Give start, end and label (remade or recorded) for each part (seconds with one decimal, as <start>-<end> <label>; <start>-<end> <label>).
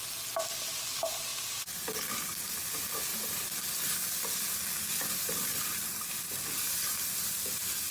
0.0-7.9 recorded